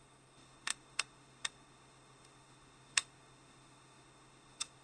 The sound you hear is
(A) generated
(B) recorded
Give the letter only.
A